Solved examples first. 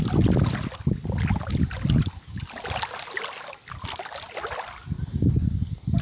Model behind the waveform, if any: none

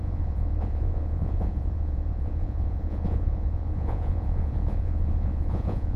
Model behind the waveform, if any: vocoder, Vocos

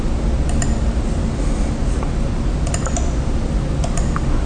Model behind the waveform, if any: none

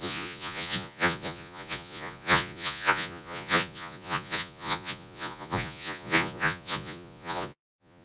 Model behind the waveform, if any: vocoder, Vocos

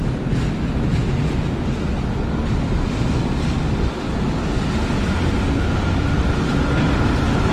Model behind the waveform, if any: none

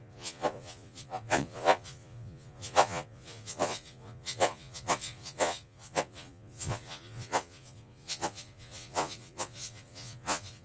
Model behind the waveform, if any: vocoder, Vocos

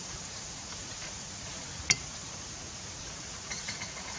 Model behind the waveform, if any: vocoder, Vocos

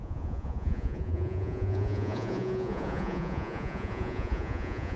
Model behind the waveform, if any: vocoder, Vocos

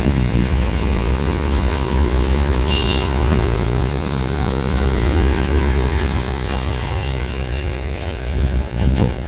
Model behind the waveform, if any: vocoder, Vocos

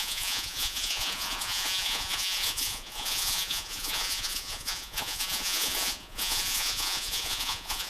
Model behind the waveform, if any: vocoder, Vocos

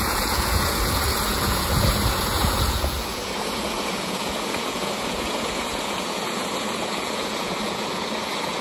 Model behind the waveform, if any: vocoder, Vocos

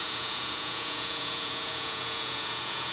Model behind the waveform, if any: vocoder, Vocos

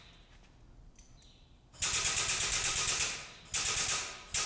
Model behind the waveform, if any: none